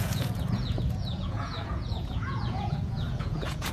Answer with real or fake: fake